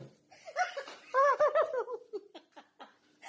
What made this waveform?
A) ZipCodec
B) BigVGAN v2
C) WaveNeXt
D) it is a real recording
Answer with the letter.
D